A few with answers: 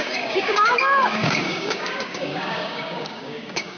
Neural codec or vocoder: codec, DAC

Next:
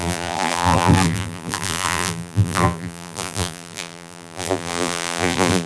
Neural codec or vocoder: vocoder, BigVGAN v2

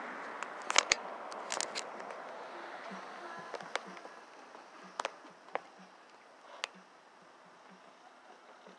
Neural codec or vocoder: none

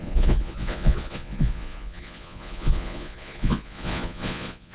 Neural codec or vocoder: vocoder, Vocos